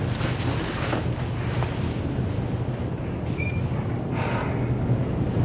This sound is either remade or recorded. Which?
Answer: recorded